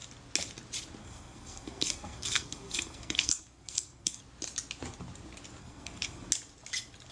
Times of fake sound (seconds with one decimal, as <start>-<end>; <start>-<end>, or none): 1.0-4.2; 5.6-6.3